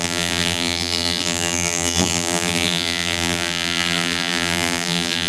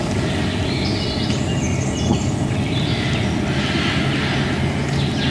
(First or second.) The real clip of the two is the second